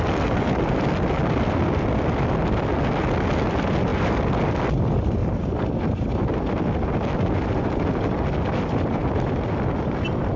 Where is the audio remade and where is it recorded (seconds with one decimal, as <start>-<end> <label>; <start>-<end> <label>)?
0.0-10.4 recorded